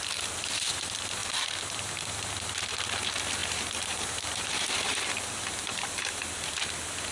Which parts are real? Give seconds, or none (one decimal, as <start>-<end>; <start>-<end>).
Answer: 0.0-3.4; 5.1-5.6; 6.2-7.1